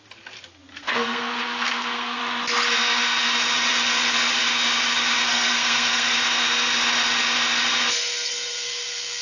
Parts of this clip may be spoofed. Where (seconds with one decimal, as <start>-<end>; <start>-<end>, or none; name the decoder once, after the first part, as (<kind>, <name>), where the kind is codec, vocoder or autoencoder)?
0.7-2.2 (codec, SNAC); 5.3-6.2; 8.3-9.2

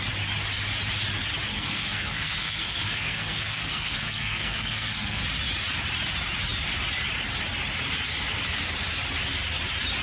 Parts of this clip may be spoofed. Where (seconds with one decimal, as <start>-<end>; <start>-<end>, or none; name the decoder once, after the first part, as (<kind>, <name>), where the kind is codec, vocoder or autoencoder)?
1.5-5.2 (codec, SNAC)

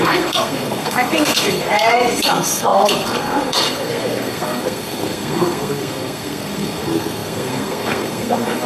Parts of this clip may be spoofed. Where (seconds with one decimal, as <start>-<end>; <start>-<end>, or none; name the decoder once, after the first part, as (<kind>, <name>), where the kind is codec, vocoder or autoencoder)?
0.0-8.7 (codec, SNAC)

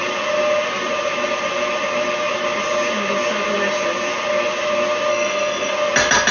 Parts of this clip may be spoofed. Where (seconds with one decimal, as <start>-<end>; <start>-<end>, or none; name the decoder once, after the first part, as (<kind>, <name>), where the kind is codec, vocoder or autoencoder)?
5.1-5.7 (codec, SNAC)

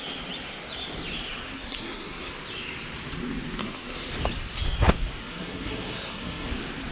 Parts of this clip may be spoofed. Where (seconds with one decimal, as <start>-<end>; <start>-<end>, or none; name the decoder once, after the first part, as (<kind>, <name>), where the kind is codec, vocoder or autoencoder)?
1.5-2.3 (codec, SNAC); 3.6-4.1; 5.2-6.5

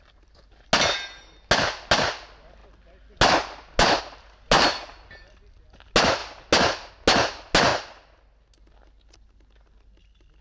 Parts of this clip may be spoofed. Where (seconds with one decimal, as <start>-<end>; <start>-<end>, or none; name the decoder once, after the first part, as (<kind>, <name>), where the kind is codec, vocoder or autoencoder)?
none